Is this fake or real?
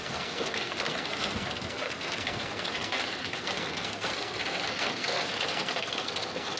fake